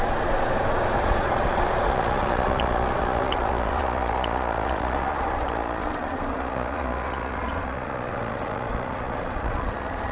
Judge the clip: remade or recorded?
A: remade